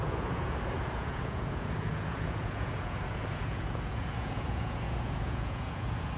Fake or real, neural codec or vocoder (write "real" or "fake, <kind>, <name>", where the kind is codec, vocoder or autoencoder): fake, vocoder, Vocos